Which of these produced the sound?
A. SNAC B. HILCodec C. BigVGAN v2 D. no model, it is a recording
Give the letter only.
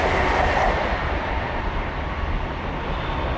C